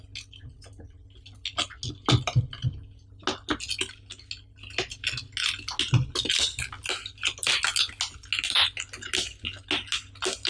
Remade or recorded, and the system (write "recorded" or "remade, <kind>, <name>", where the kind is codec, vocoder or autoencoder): recorded